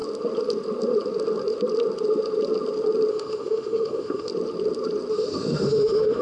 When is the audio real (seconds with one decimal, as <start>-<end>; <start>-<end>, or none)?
0.0-3.1; 4.3-5.1